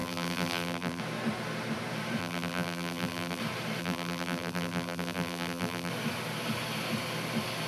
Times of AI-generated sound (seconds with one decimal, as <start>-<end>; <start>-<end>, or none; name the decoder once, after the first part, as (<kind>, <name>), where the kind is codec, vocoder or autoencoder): 0.0-1.0 (vocoder, BigVGAN v2); 2.2-3.4; 3.8-5.9